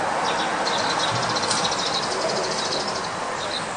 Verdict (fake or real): real